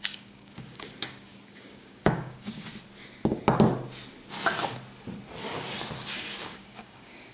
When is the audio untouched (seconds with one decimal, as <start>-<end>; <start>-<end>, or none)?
2.7-6.4